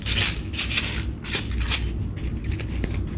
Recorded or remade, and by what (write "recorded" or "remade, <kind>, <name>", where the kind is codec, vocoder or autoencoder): recorded